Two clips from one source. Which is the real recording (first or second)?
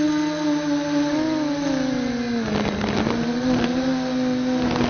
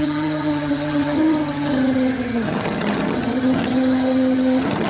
first